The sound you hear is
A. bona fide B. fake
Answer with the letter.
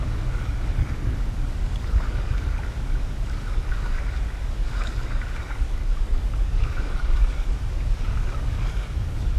B